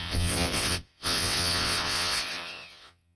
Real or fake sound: fake